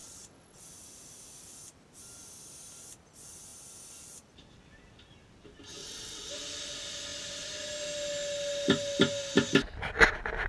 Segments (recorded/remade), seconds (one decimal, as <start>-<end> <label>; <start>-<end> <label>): 0.0-0.6 remade; 0.6-5.8 recorded; 5.8-6.3 remade; 6.3-10.5 recorded